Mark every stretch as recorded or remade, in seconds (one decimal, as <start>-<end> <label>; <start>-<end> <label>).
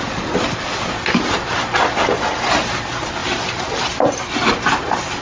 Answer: 0.0-5.2 recorded